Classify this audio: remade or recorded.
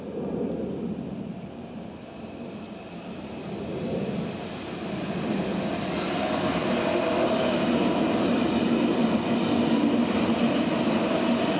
recorded